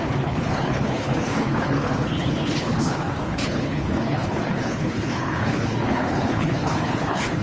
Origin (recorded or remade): remade